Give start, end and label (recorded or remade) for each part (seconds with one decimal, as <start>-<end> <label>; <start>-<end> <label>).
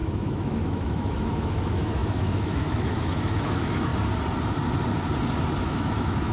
0.0-3.9 remade; 3.9-5.6 recorded; 5.6-6.3 remade